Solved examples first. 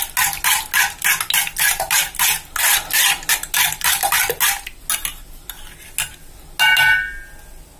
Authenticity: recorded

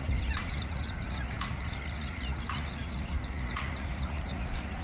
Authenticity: remade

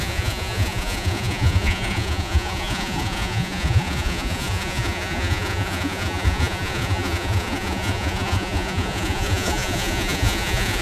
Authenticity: remade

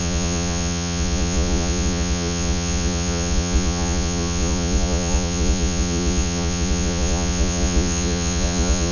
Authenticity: remade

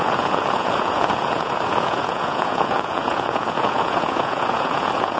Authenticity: remade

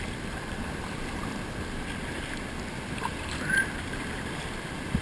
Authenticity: recorded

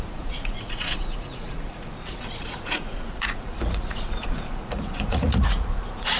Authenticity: remade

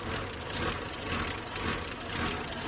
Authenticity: recorded